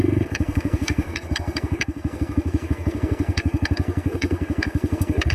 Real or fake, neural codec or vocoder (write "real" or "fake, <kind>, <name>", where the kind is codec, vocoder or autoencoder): fake, codec, SNAC